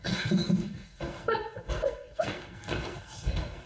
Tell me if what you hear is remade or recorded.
remade